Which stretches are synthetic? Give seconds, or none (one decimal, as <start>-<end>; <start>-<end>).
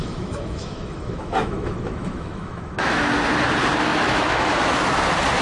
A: 0.0-3.0; 3.9-4.5